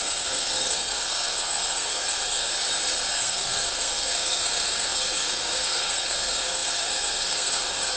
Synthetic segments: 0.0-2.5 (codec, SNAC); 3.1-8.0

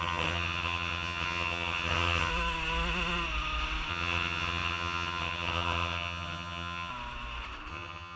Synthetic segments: 0.0-2.3 (vocoder, HiFi-GAN); 3.9-6.9; 7.7-8.2

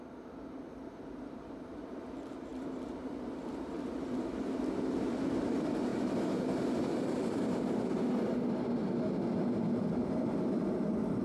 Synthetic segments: 2.5-4.4 (vocoder, BigVGAN v2); 5.9-7.9

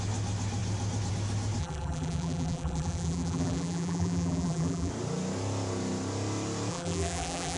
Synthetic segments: 1.6-4.9 (vocoder, BigVGAN v2); 6.7-7.6

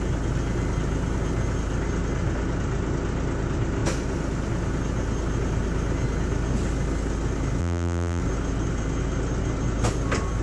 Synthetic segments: 7.6-8.2 (vocoder, BigVGAN v2)